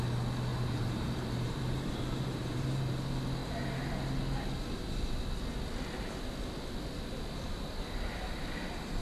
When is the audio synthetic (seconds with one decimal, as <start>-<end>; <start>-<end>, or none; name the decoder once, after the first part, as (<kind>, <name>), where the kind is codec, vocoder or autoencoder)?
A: 0.5-2.8 (vocoder, BigVGAN v2)